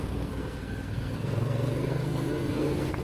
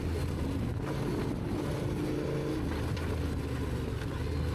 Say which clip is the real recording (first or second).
second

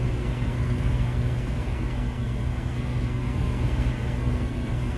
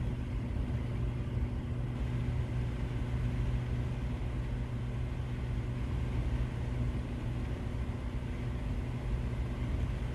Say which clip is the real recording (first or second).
second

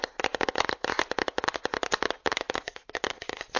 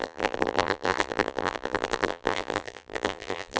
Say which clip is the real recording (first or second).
first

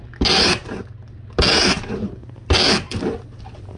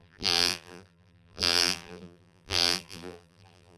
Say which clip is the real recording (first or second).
first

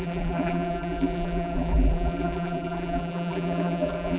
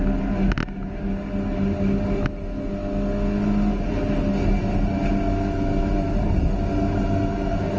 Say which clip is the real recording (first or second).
second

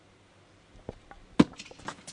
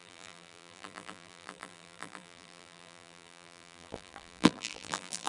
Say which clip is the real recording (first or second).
first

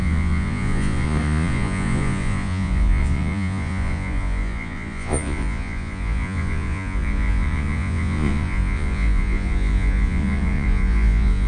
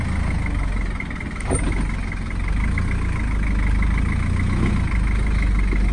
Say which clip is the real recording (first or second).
second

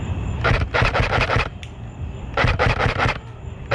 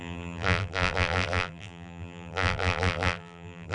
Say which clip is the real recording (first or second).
first